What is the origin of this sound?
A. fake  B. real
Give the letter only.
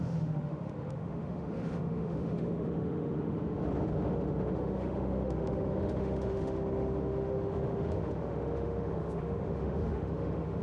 A